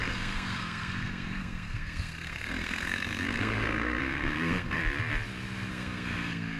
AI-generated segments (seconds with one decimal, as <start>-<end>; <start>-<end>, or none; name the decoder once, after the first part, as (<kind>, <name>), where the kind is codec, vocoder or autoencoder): 0.0-4.8 (codec, SNAC); 5.7-6.6